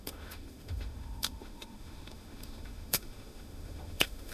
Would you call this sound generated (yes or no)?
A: yes